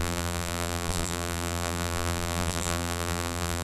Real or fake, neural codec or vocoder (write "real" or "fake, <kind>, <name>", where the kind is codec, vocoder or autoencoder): fake, vocoder, BigVGAN v2